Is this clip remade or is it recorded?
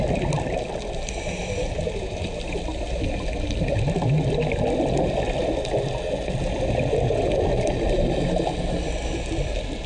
recorded